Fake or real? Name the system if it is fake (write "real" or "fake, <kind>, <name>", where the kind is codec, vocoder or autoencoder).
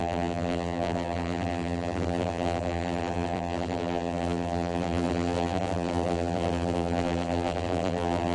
fake, vocoder, BigVGAN v2